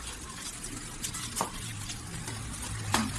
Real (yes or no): yes